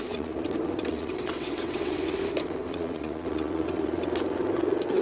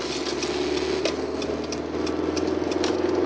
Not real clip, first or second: first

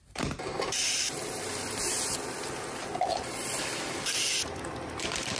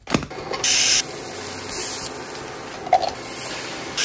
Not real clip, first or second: first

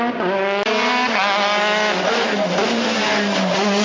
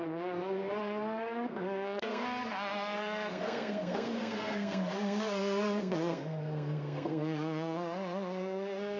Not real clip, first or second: second